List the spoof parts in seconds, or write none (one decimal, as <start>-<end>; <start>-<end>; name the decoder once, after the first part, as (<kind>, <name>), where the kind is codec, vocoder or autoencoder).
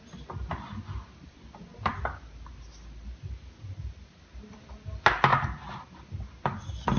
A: none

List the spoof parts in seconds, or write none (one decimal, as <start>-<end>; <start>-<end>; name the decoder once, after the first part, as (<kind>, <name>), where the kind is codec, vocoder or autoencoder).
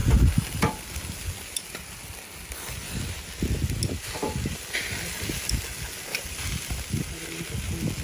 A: none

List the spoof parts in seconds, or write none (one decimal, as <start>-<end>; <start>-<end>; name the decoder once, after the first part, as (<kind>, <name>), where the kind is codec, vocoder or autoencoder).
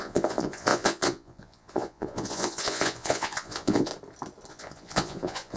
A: 0.0-3.9 (vocoder, Vocos); 4.5-5.6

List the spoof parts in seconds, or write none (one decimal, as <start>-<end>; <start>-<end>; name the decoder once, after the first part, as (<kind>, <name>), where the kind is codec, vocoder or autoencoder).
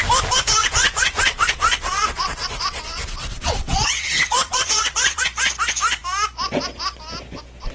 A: 0.6-5.2 (vocoder, WaveNeXt)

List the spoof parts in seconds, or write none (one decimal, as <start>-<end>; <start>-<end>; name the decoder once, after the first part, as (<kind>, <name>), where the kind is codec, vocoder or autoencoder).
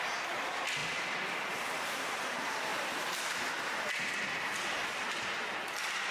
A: 0.8-1.6 (vocoder, BigVGAN v2)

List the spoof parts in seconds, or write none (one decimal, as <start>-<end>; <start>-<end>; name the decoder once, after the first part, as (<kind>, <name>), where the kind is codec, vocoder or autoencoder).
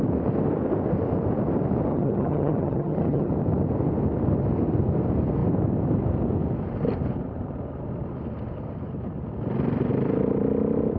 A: 1.9-3.3 (vocoder, HiFi-GAN)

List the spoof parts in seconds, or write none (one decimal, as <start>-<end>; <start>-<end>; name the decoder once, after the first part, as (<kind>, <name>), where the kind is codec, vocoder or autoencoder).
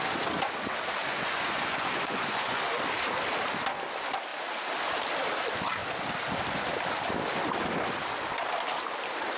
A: 1.1-2.6 (vocoder, Vocos)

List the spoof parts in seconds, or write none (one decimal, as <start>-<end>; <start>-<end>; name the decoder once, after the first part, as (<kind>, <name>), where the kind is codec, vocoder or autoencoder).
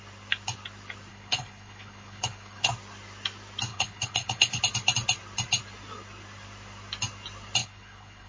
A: 1.1-2.7 (codec, HILCodec); 3.7-4.6; 7.6-8.3